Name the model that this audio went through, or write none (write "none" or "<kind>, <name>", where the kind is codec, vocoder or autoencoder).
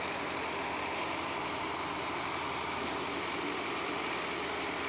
none